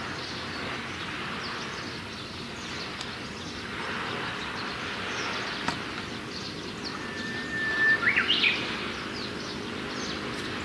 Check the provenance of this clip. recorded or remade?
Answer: recorded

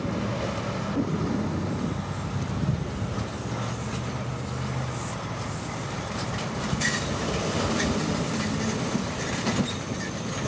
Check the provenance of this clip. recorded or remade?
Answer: recorded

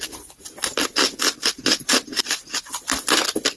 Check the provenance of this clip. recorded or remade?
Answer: recorded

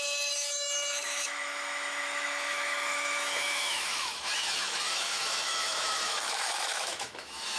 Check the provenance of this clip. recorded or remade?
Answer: remade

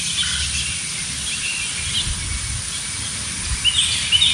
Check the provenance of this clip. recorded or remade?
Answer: recorded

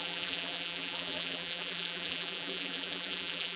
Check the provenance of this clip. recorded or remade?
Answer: remade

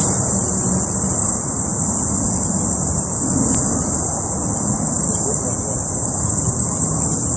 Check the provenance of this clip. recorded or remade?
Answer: recorded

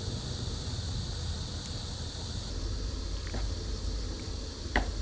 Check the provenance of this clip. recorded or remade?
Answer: recorded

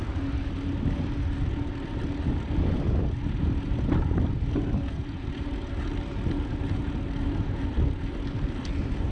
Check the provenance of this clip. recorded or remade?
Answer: recorded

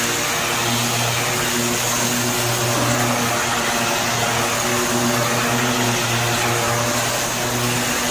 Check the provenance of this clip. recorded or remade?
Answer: recorded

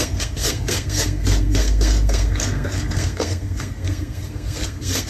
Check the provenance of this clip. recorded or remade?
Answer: remade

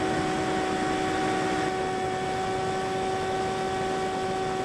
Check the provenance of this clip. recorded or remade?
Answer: recorded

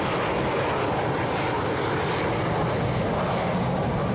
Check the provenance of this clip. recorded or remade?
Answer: recorded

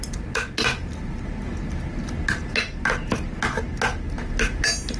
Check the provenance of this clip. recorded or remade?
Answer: recorded